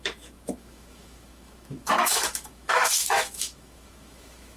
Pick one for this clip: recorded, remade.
remade